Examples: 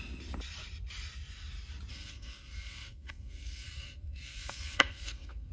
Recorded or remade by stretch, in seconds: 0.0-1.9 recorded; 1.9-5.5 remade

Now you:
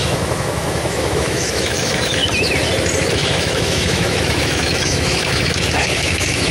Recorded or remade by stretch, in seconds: 0.0-2.2 remade; 2.2-3.1 recorded; 3.1-6.5 remade

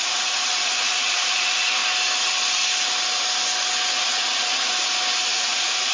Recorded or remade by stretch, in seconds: 0.0-1.8 remade; 1.8-3.9 recorded; 3.9-4.7 remade; 4.7-5.3 recorded; 5.3-5.9 remade

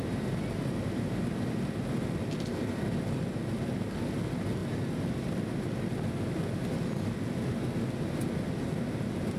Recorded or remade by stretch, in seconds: 0.0-9.4 recorded

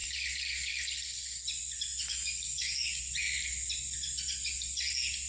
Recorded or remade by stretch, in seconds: 0.0-1.9 recorded; 1.9-3.0 remade; 3.0-5.3 recorded

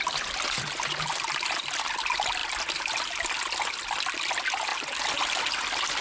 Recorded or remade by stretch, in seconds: 0.0-6.0 recorded

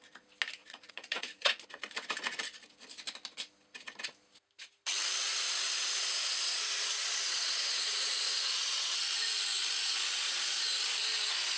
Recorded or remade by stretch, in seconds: 0.0-0.6 recorded; 0.6-1.8 remade; 1.8-5.3 recorded; 5.3-9.0 remade; 9.0-11.6 recorded